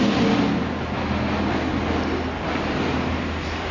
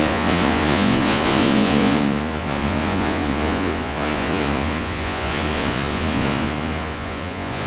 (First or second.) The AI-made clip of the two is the second